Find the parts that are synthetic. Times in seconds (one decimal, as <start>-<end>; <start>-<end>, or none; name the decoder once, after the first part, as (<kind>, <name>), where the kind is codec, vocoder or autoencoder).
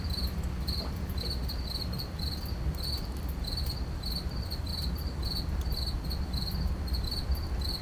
0.0-4.7 (vocoder, BigVGAN v2); 5.5-7.8